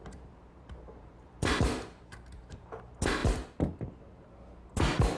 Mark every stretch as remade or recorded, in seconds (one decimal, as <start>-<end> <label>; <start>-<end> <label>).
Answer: 0.0-2.8 remade; 2.8-5.2 recorded